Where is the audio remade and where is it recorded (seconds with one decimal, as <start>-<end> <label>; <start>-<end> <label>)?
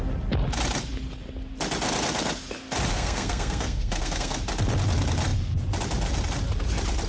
0.0-2.9 recorded; 2.9-4.4 remade; 4.4-7.1 recorded